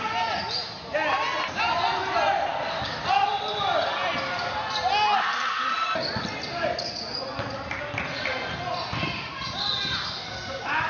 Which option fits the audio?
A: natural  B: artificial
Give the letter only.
A